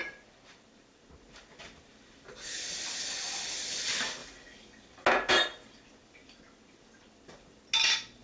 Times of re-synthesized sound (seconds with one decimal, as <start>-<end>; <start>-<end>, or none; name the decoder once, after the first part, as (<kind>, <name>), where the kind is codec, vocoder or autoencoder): none